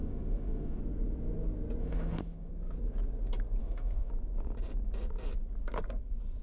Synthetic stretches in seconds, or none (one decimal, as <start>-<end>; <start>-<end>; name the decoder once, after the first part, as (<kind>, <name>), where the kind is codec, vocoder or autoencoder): 0.0-0.8 (autoencoder, DAC-VAE); 1.8-2.5; 3.6-4.1